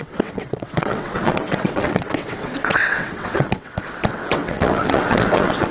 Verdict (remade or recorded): remade